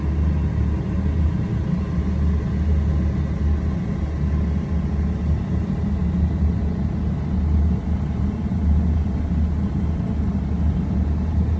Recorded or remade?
recorded